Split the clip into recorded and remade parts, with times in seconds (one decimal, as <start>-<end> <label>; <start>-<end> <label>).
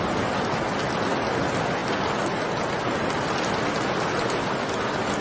0.0-5.2 recorded